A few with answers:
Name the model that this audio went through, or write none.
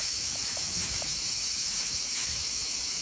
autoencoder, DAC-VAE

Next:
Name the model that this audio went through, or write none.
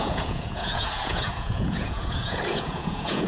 vocoder, Vocos